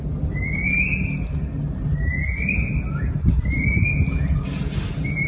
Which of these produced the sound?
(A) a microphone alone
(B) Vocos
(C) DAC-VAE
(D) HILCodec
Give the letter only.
A